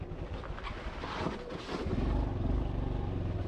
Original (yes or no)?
yes